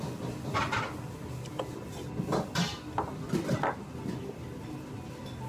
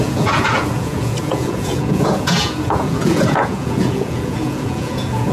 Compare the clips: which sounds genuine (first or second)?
first